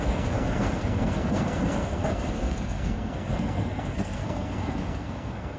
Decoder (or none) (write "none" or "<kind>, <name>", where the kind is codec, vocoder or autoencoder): codec, SNAC